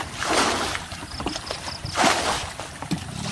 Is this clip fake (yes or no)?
no